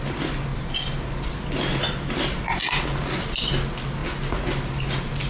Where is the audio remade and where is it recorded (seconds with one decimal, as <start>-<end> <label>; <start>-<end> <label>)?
0.0-5.3 recorded